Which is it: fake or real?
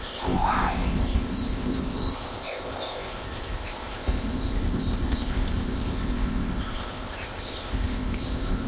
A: fake